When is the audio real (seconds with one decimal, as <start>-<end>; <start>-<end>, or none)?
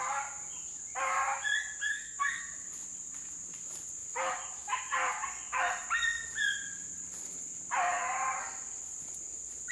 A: 0.0-1.9; 2.4-9.7